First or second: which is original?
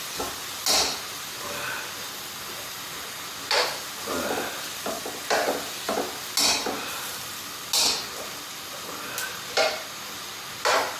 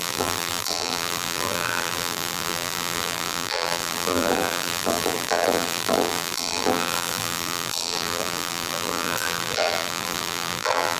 first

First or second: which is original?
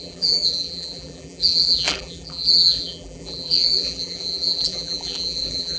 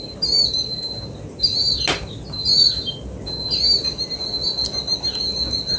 second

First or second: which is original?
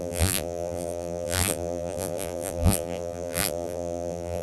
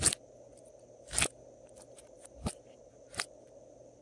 second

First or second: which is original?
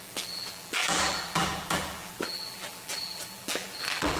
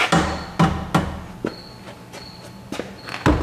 second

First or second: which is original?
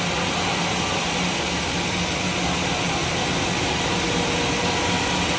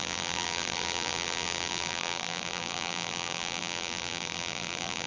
first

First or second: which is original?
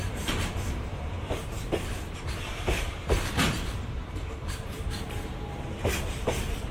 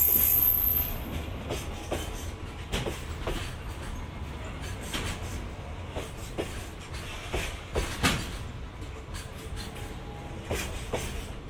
second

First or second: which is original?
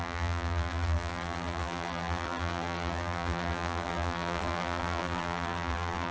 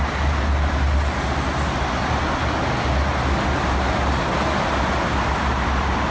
second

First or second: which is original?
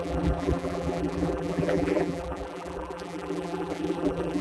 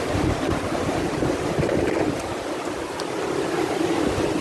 second